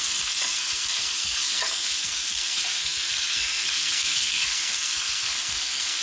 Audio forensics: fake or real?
fake